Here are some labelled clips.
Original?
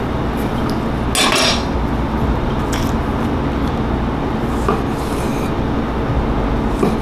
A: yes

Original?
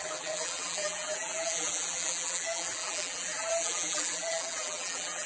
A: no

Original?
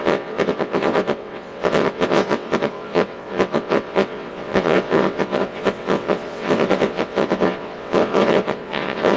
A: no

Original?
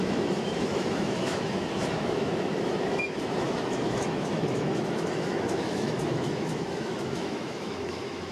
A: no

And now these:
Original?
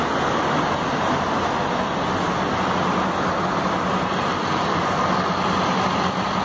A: yes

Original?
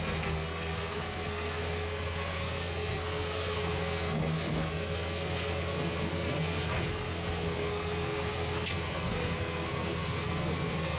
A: no